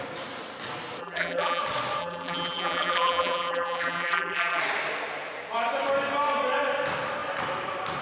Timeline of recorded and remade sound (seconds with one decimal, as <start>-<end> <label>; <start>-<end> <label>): 0.0-1.0 recorded; 1.0-1.6 remade; 1.6-2.0 recorded; 2.0-4.6 remade; 4.6-8.0 recorded